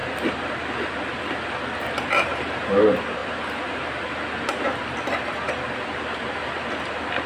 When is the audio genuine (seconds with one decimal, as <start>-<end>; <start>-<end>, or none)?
0.0-2.3; 2.8-3.2; 4.0-7.3